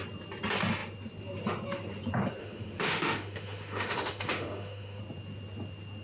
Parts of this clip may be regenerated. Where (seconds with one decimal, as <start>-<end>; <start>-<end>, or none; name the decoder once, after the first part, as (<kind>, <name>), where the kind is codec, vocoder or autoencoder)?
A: 2.4-5.0 (autoencoder, DAC-VAE)